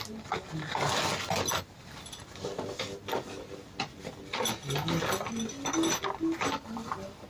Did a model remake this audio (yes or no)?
no